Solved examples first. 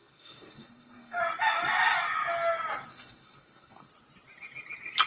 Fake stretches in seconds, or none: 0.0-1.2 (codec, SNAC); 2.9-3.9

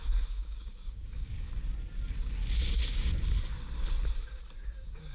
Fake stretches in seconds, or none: 0.0-1.5 (codec, DAC); 4.6-5.1

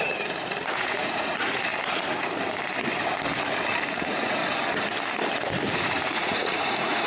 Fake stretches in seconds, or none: 0.0-1.7 (vocoder, Vocos); 3.8-4.4; 5.7-7.1

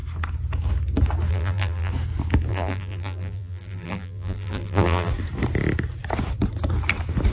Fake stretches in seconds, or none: 1.3-1.9 (vocoder, BigVGAN v2); 2.5-5.1

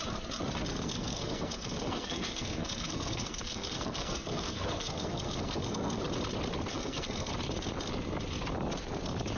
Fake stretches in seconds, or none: 0.7-6.0 (codec, SNAC); 6.7-7.3

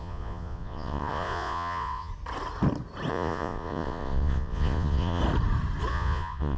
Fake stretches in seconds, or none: 0.0-2.1 (vocoder, Vocos); 3.1-5.2; 5.9-6.6

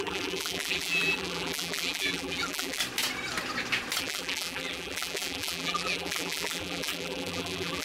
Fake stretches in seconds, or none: 0.0-2.8 (vocoder, BigVGAN v2); 4.0-7.8

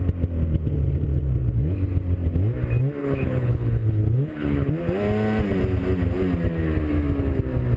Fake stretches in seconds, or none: 3.0-4.7 (codec, HILCodec)